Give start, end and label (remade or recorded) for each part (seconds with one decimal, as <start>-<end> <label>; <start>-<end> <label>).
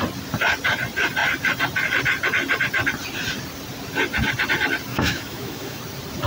0.0-4.9 recorded; 4.9-5.8 remade; 5.8-6.3 recorded